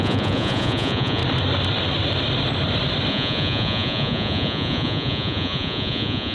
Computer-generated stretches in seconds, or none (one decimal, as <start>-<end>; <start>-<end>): 0.0-1.2; 3.1-6.3